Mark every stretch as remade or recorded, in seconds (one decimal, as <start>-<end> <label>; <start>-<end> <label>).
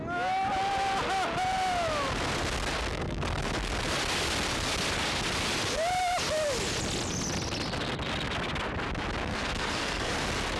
0.0-2.9 recorded; 2.9-3.4 remade; 3.4-9.2 recorded; 9.2-10.1 remade; 10.1-10.6 recorded